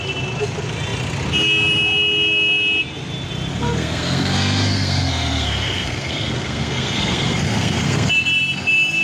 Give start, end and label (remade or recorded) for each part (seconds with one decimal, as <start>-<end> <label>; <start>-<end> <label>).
0.0-3.5 recorded; 3.5-8.1 remade; 8.1-9.0 recorded